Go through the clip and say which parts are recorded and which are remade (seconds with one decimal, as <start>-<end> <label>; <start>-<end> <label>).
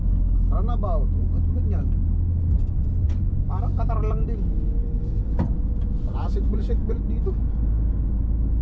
0.0-4.8 recorded; 4.8-5.3 remade; 5.3-8.6 recorded